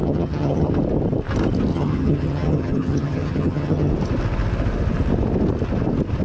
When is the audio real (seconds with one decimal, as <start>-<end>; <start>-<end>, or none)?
0.7-1.7; 3.9-6.2